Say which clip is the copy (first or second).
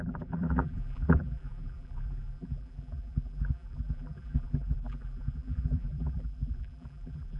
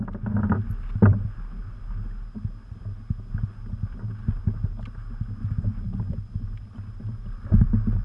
first